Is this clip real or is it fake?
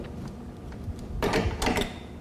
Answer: real